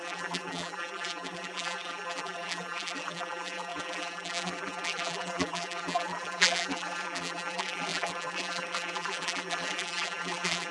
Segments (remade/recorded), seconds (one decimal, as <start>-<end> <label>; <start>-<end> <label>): 0.0-10.7 remade